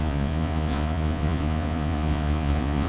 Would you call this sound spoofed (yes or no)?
yes